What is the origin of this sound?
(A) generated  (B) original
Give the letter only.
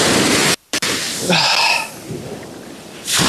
A